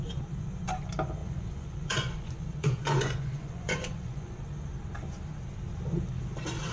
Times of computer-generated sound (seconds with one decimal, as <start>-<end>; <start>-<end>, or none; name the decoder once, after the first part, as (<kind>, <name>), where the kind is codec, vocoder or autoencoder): 1.2-4.4 (vocoder, Vocos)